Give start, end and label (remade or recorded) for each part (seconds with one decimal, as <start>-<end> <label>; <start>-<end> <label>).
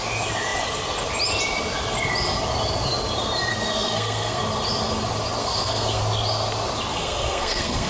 0.0-3.5 recorded; 3.5-4.4 remade; 4.4-5.4 recorded; 5.4-6.0 remade; 6.0-6.9 recorded; 6.9-7.9 remade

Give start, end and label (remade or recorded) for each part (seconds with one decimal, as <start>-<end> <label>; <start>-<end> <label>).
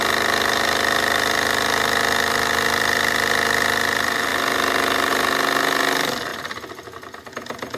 0.0-6.3 recorded; 6.3-7.3 remade; 7.3-7.8 recorded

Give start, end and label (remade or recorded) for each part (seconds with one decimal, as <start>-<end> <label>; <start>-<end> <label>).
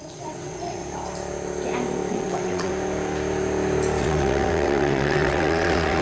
0.0-0.8 remade; 0.8-2.1 recorded; 2.1-2.7 remade; 2.7-4.0 recorded; 4.0-6.0 remade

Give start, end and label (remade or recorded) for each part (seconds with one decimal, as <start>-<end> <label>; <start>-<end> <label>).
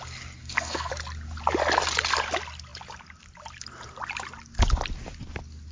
0.0-0.4 recorded; 0.4-0.9 remade; 0.9-5.7 recorded